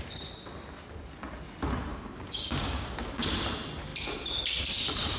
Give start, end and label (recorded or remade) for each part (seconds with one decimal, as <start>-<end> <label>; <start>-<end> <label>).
0.0-1.9 recorded; 1.9-3.2 remade; 3.2-5.2 recorded